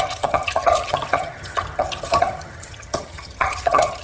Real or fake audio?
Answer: fake